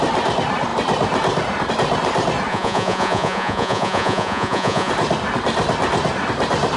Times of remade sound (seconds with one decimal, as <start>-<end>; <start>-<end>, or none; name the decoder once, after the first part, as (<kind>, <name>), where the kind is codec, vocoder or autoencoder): 2.5-4.9 (vocoder, Vocos)